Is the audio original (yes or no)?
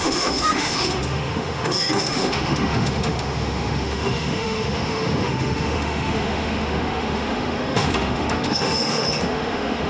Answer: no